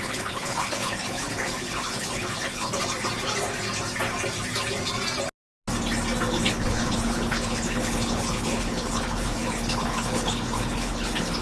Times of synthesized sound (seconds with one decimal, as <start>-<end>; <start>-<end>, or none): 0.0-2.8; 6.3-11.4